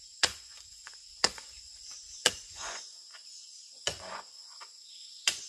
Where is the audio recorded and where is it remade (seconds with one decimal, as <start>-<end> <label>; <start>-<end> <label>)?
0.0-5.5 remade

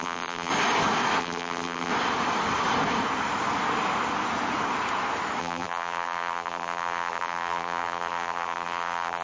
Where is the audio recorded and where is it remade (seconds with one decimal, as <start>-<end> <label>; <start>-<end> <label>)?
0.0-0.5 remade; 0.5-1.2 recorded; 1.2-1.9 remade; 1.9-5.4 recorded; 5.4-9.2 remade

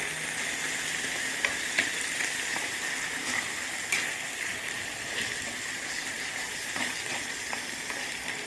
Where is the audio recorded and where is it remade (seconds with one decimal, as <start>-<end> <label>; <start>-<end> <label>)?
0.0-6.0 recorded; 6.0-7.5 remade; 7.5-8.5 recorded

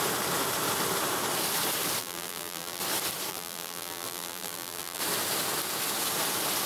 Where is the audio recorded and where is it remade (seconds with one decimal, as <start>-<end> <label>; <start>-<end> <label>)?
0.0-2.0 recorded; 2.0-2.8 remade; 2.8-3.3 recorded; 3.3-5.0 remade; 5.0-6.7 recorded